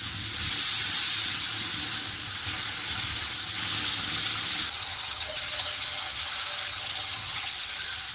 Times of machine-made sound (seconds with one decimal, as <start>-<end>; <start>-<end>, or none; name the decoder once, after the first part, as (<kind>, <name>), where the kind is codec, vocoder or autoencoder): 4.8-6.2 (vocoder, HiFi-GAN); 6.7-7.5